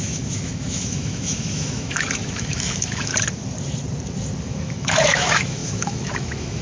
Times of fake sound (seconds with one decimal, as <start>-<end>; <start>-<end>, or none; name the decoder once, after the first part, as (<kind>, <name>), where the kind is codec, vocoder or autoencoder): 0.0-3.1 (autoencoder, DAC-VAE); 4.4-6.6